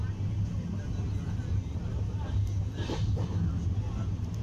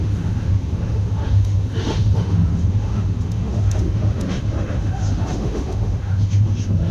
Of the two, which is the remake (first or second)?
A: second